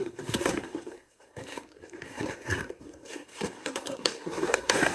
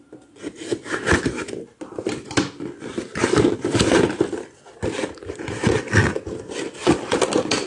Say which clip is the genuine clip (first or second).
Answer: second